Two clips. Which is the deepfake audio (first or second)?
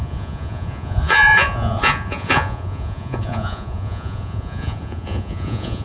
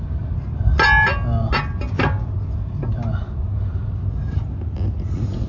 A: first